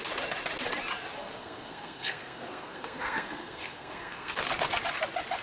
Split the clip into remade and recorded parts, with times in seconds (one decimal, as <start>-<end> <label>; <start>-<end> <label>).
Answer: 0.0-1.2 recorded; 1.2-4.4 remade; 4.4-5.4 recorded